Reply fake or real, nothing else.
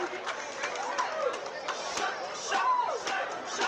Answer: fake